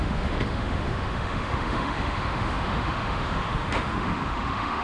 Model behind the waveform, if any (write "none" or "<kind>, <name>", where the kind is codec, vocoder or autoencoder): autoencoder, DAC-VAE